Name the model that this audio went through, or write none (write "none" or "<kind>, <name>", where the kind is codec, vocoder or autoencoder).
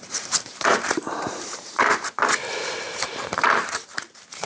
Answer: vocoder, BigVGAN v2